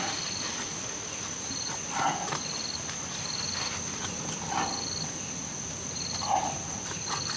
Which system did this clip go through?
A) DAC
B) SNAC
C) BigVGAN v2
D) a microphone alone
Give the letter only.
D